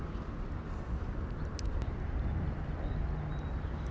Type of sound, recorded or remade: recorded